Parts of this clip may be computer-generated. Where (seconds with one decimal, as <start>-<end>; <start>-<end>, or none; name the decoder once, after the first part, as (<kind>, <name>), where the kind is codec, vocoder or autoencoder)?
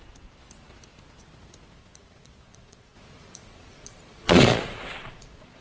1.8-5.6 (vocoder, Vocos)